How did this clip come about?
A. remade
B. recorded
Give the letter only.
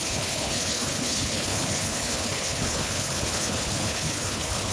A